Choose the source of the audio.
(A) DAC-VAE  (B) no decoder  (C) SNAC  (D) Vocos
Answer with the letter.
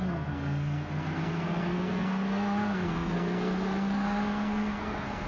C